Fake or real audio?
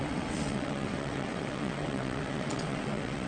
fake